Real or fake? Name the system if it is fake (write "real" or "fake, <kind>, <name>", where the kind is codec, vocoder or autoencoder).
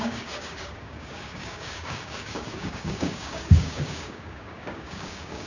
fake, codec, DAC